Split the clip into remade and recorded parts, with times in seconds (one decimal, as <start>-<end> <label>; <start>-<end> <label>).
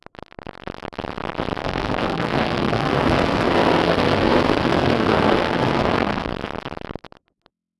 0.0-1.6 recorded; 1.6-6.3 remade; 6.3-7.8 recorded